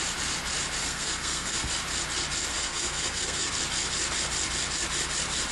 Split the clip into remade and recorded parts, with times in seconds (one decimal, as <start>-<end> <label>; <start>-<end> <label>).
0.0-0.8 recorded; 0.8-1.7 remade; 1.7-2.5 recorded; 2.5-3.5 remade; 3.5-5.5 recorded